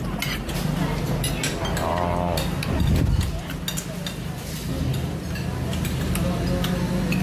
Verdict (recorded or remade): recorded